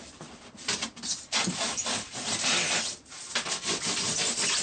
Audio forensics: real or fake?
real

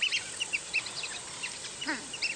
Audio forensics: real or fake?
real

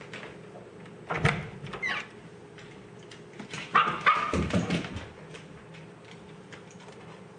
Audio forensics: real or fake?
real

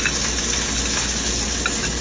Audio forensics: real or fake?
real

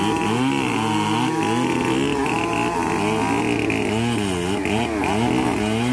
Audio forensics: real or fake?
real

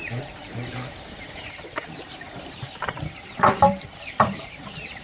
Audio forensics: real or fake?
fake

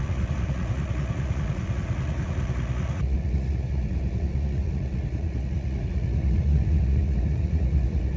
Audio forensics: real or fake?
fake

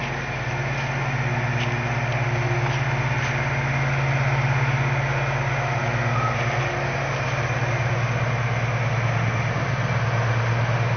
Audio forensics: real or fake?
real